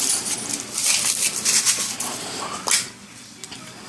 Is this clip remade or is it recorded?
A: recorded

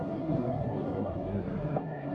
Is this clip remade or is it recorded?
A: remade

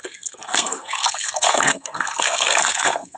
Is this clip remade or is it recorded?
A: remade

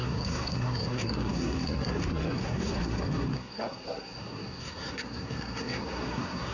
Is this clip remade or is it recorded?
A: remade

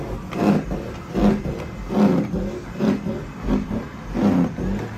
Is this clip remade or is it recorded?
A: recorded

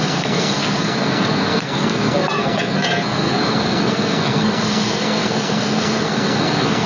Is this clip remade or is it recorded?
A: remade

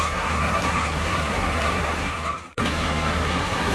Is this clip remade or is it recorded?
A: remade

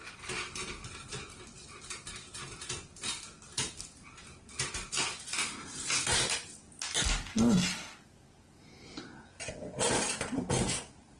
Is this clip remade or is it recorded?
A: recorded